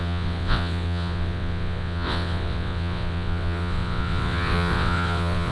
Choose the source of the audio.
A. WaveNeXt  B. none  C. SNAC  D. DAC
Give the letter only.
A